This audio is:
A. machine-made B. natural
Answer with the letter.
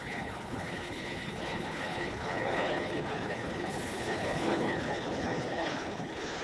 A